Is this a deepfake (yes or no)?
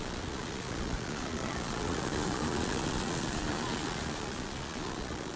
yes